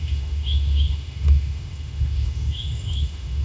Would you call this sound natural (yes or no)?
no